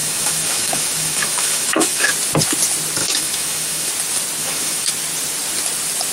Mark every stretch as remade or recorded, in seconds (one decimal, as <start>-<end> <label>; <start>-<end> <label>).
0.0-2.1 remade; 2.1-3.0 recorded; 3.0-3.9 remade; 3.9-4.4 recorded; 4.4-4.9 remade; 4.9-6.1 recorded

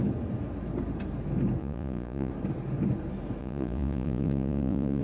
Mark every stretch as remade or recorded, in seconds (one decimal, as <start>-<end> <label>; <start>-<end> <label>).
0.0-1.6 recorded; 1.6-2.3 remade; 2.3-3.4 recorded; 3.4-5.0 remade

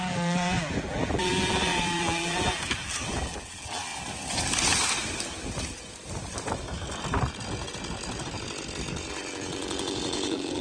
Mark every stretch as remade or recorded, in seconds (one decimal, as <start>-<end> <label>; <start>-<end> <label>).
0.0-3.9 remade; 3.9-9.1 recorded; 9.1-10.6 remade

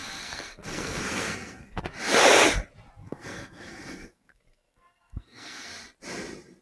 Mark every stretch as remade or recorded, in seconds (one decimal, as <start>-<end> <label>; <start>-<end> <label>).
0.0-1.8 remade; 1.8-3.0 recorded; 3.0-5.7 remade; 5.7-6.6 recorded

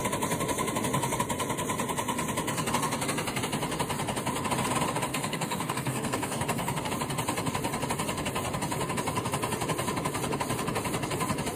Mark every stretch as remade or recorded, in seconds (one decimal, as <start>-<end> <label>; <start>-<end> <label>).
0.0-5.1 recorded; 5.1-6.9 remade; 6.9-11.6 recorded

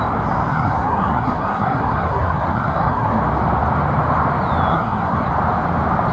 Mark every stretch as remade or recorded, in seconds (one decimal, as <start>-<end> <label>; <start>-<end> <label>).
0.0-0.5 recorded; 0.5-3.2 remade; 3.2-4.7 recorded; 4.7-5.3 remade; 5.3-6.1 recorded

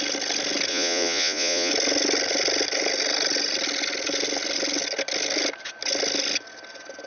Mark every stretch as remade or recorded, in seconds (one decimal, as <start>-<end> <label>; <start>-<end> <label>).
0.0-0.7 recorded; 0.7-1.7 remade; 1.7-7.1 recorded

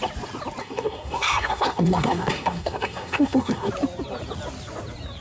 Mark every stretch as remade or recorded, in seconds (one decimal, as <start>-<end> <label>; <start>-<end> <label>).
0.0-0.6 recorded; 0.6-3.7 remade; 3.7-5.2 recorded